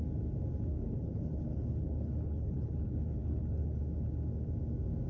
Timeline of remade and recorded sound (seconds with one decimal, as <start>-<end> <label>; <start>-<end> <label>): 0.0-0.7 recorded; 0.7-3.8 remade; 3.8-5.1 recorded

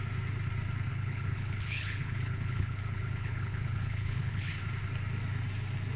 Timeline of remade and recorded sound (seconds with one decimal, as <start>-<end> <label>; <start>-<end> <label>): 0.0-0.9 recorded; 0.9-4.5 remade; 4.5-6.0 recorded

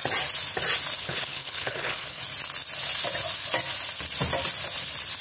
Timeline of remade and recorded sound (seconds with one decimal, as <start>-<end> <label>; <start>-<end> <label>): 0.0-1.0 recorded; 1.0-2.2 remade; 2.2-5.2 recorded

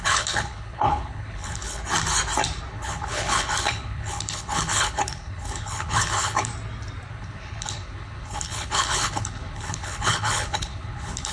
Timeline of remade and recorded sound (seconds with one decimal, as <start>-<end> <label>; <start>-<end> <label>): 0.0-1.8 remade; 1.8-2.7 recorded; 2.7-6.5 remade; 6.5-7.1 recorded; 7.1-11.3 remade

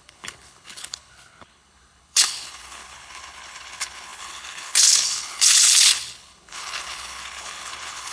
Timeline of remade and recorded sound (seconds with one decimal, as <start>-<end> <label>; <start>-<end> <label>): 0.0-8.1 remade

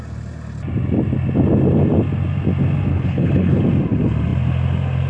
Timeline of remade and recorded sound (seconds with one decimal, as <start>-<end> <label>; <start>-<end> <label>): 0.0-2.9 recorded; 2.9-3.6 remade; 3.6-5.1 recorded

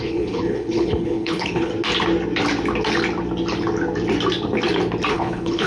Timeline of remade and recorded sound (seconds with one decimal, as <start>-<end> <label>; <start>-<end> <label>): 0.0-1.7 remade; 1.7-5.1 recorded; 5.1-5.7 remade

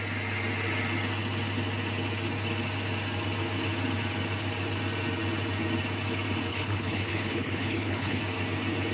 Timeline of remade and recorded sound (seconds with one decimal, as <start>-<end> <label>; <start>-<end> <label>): 0.0-6.5 recorded; 6.5-8.2 remade; 8.2-8.9 recorded